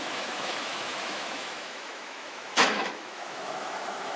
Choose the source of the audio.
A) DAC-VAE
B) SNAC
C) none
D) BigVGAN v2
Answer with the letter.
A